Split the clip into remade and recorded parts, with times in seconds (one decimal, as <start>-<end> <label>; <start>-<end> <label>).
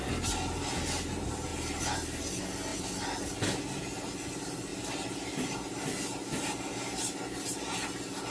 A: 0.0-8.3 recorded